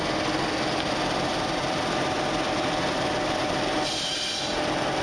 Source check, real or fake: real